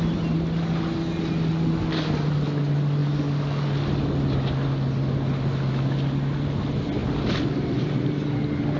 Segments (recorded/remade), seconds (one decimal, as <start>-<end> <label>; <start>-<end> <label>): 0.0-8.8 recorded

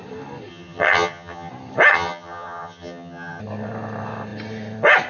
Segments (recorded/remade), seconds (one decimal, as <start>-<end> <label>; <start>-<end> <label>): 0.0-0.5 recorded; 0.5-1.5 remade; 1.5-1.9 recorded; 1.9-3.4 remade; 3.4-5.1 recorded

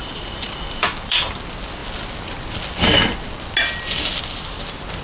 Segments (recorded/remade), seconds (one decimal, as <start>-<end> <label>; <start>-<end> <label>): 0.0-1.3 remade; 1.3-5.0 recorded

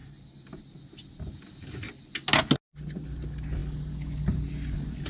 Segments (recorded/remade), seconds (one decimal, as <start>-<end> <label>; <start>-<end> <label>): 0.0-0.6 remade; 0.6-5.1 recorded

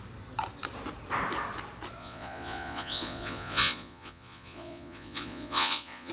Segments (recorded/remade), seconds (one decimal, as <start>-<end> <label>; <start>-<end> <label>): 0.0-2.0 recorded; 2.0-6.1 remade

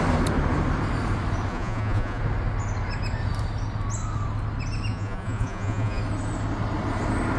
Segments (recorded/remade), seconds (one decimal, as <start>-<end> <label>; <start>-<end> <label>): 0.0-1.5 recorded; 1.5-2.2 remade; 2.2-4.9 recorded; 4.9-6.0 remade; 6.0-7.4 recorded